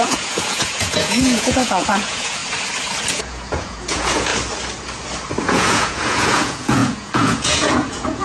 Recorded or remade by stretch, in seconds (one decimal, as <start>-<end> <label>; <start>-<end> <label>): 0.0-2.4 remade; 2.4-3.1 recorded; 3.1-4.3 remade; 4.3-5.4 recorded; 5.4-8.2 remade